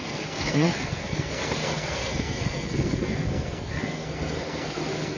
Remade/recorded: remade